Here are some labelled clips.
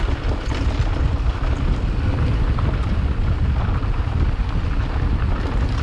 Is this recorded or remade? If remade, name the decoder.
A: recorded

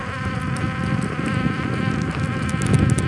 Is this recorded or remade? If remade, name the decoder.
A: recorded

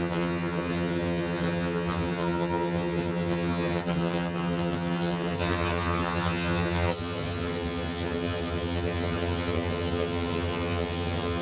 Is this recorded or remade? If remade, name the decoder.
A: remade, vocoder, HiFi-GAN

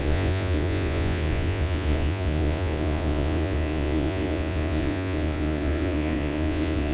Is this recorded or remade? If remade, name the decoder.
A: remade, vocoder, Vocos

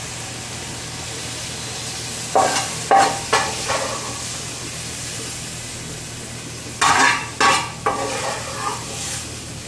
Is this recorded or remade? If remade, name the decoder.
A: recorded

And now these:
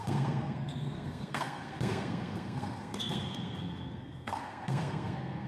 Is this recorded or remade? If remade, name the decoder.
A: remade, codec, SNAC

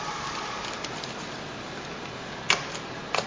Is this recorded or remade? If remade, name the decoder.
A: recorded